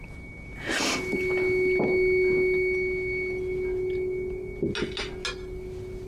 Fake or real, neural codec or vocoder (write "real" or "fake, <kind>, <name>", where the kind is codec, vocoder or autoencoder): real